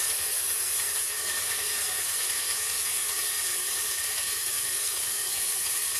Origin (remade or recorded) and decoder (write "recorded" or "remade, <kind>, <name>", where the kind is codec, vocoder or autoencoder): remade, codec, SNAC